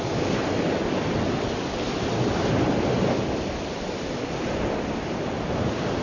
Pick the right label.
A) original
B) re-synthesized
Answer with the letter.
A